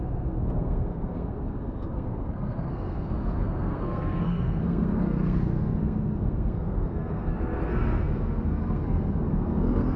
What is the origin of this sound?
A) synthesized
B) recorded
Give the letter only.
A